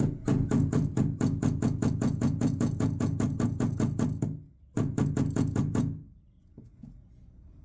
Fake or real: fake